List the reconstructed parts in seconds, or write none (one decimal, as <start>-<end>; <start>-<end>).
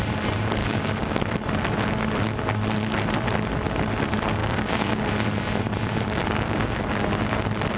0.6-1.2; 4.4-5.0; 6.2-6.8